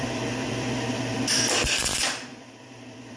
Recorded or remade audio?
remade